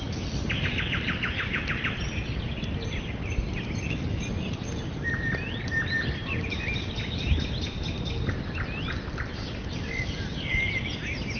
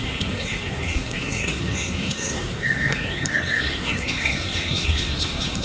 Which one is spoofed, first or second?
second